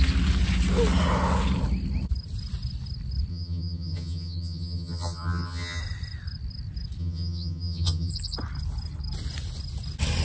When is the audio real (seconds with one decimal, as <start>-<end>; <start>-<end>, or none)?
0.0-3.3; 5.8-7.0; 8.1-10.2